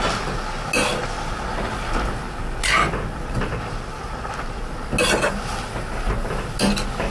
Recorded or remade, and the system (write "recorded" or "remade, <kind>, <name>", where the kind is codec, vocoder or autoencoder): recorded